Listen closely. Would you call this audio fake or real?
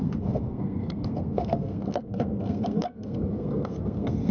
fake